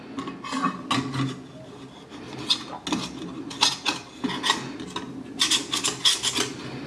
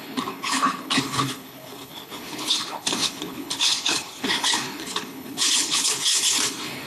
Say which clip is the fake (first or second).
second